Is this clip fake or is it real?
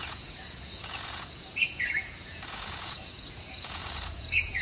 fake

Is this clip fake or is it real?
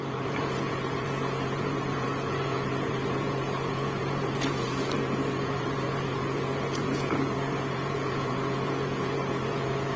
fake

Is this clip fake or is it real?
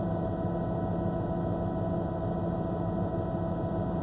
real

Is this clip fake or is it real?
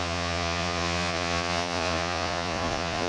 fake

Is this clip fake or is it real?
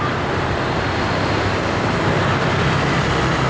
real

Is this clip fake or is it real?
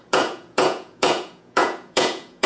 fake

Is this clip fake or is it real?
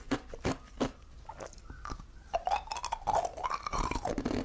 real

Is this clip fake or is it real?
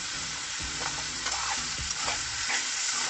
fake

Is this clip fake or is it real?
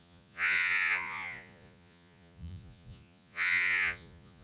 fake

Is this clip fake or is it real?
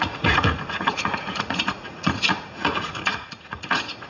fake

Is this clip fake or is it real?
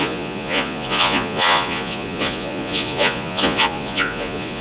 fake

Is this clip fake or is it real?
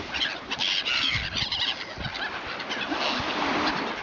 real